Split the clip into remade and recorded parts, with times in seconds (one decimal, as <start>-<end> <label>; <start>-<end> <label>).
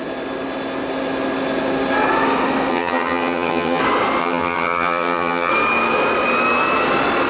0.0-2.7 recorded; 2.7-3.8 remade; 3.8-4.2 recorded; 4.2-5.5 remade; 5.5-7.3 recorded